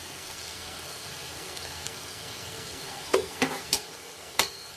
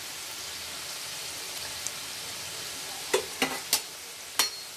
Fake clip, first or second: first